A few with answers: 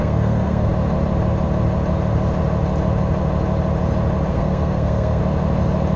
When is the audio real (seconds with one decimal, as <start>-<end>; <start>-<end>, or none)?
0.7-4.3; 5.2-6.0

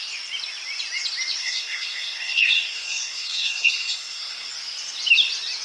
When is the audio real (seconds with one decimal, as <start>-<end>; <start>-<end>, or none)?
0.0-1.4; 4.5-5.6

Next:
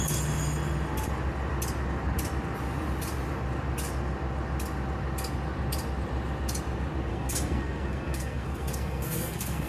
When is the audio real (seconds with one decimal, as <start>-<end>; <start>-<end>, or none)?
0.0-7.1

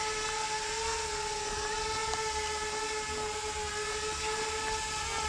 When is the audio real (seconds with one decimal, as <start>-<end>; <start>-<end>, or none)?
0.0-5.3

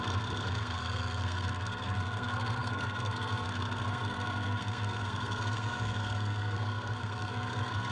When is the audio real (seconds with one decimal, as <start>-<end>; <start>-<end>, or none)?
none

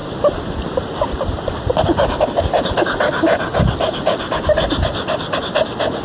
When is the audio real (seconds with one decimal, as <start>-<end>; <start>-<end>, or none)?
0.0-6.0